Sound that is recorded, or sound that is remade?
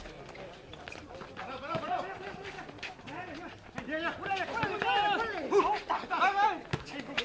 recorded